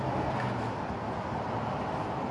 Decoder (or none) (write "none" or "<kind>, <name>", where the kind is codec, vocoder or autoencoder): none